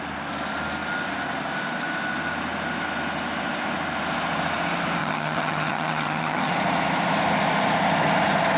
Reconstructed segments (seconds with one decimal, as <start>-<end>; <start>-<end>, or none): 5.0-6.5